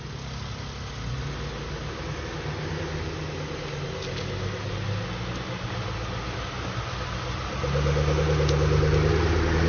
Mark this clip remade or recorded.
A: recorded